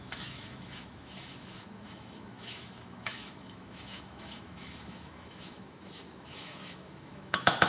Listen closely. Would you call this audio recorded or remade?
remade